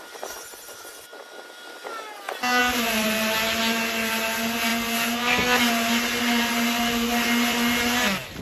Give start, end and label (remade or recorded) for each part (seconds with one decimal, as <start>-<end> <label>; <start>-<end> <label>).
0.0-2.6 recorded; 2.6-3.6 remade; 3.6-8.4 recorded